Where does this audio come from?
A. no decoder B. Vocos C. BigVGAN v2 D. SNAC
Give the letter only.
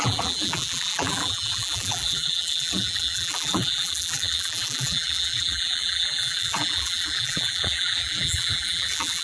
C